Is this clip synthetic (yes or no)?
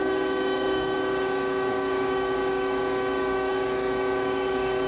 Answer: yes